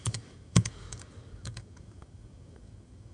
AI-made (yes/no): yes